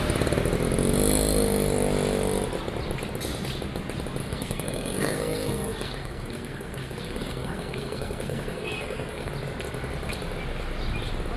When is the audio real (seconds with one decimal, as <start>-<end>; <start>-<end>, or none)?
0.0-4.2; 9.3-11.4